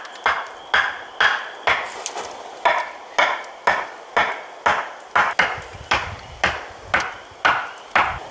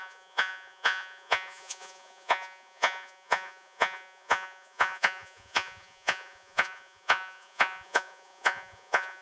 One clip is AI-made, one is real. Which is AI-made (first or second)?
second